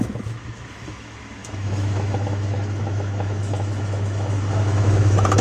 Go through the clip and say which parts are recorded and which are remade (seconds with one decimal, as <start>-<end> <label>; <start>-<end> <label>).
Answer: 0.0-5.4 remade